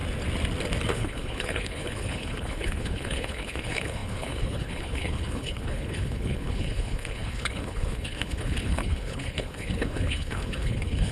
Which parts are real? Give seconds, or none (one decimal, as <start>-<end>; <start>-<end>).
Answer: 0.0-0.9